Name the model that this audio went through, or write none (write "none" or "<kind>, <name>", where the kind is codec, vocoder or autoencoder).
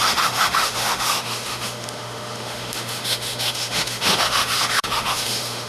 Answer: autoencoder, DAC-VAE